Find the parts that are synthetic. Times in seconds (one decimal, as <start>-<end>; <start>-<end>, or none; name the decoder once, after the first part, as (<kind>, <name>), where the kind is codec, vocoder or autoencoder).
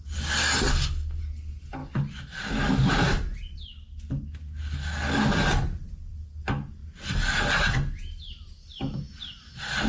0.7-1.2 (autoencoder, DAC-VAE)